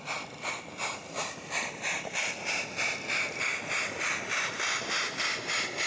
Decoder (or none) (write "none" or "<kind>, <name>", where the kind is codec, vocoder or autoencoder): none